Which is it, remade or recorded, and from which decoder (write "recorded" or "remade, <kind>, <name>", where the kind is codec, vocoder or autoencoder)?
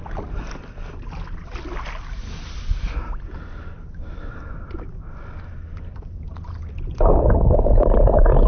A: recorded